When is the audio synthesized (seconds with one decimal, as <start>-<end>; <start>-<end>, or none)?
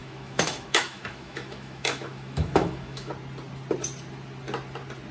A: 0.0-3.1